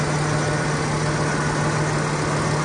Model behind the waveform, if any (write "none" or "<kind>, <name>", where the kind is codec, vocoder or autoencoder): none